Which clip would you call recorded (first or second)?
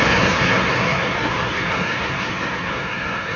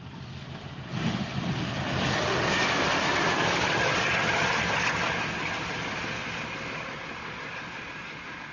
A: second